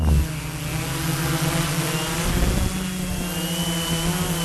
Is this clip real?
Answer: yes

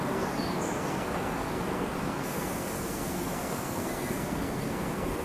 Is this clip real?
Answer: no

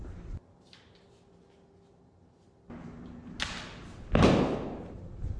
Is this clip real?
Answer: yes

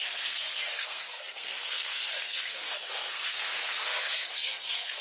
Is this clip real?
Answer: no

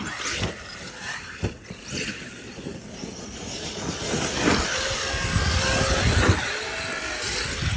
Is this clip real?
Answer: yes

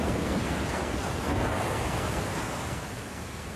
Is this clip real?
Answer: no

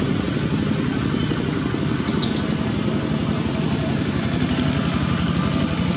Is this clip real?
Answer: yes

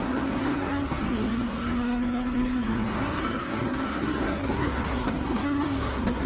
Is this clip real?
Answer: no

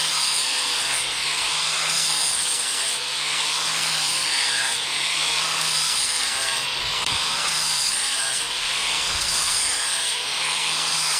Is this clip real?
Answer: no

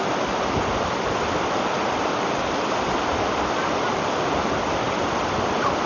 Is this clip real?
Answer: yes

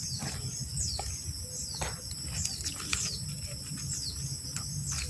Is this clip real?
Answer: yes